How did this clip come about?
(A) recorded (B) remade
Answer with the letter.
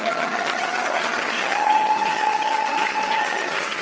B